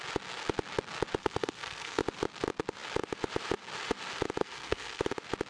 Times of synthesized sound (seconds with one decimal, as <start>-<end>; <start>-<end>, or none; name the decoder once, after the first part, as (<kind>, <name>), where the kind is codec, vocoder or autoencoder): 1.2-2.0 (codec, SNAC); 4.4-5.0